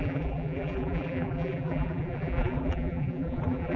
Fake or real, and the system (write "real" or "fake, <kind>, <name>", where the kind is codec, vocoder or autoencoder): fake, vocoder, BigVGAN v2